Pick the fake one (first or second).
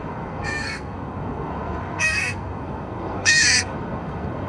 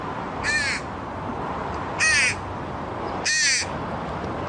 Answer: first